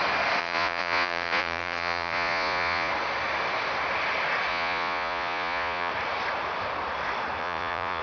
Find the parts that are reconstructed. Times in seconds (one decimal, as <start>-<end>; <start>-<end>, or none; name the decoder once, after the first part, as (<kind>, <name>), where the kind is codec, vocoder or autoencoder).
0.4-2.9 (vocoder, Vocos); 4.5-5.9; 7.4-8.0